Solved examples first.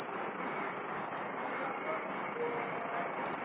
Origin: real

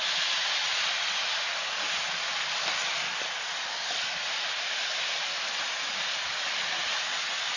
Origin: real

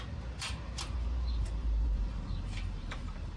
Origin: fake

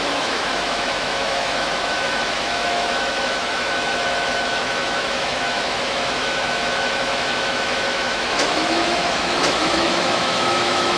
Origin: fake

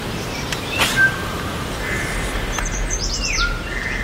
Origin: real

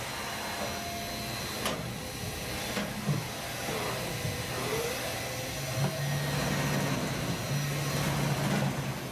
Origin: real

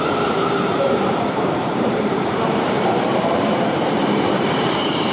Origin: fake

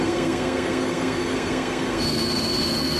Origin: fake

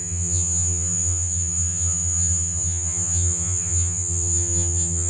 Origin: fake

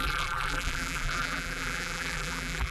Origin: fake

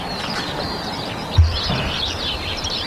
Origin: fake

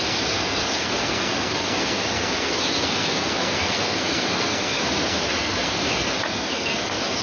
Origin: fake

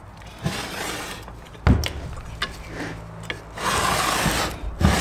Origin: real